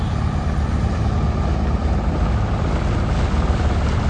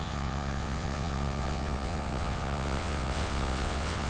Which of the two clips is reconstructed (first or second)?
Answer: second